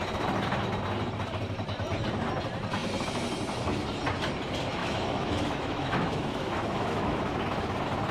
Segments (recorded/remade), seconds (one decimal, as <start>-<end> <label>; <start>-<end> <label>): 0.0-4.8 recorded; 4.8-7.3 remade; 7.3-8.1 recorded